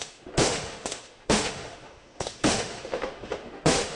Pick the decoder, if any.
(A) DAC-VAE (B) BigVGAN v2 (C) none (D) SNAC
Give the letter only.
A